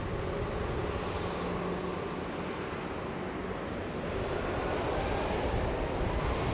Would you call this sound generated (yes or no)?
no